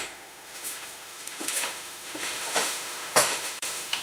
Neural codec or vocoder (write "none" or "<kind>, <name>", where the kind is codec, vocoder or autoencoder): autoencoder, DAC-VAE